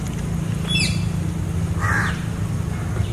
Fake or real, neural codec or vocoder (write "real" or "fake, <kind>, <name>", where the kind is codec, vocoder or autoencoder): real